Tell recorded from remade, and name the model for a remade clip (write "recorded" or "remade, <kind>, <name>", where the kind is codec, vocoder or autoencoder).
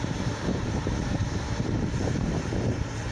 remade, vocoder, BigVGAN v2